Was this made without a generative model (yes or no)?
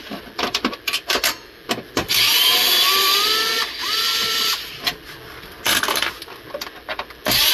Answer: yes